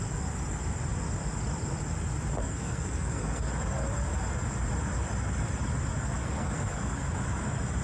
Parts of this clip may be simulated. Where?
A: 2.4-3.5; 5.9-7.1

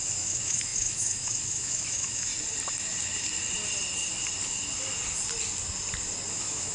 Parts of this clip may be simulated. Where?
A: 0.0-2.3; 6.3-6.7

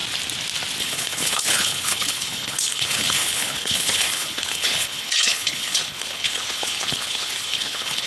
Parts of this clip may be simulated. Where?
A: 0.8-8.1

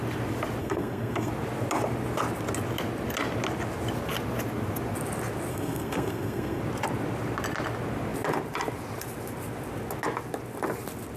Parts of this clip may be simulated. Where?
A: 0.6-1.3; 5.5-6.6